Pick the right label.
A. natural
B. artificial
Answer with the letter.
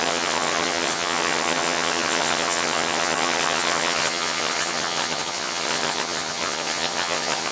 B